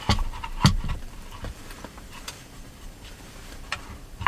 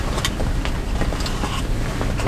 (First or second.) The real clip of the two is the second